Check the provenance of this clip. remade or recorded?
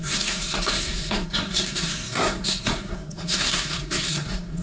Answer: remade